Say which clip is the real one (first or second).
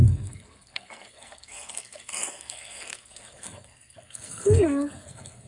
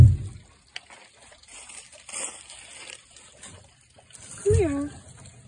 second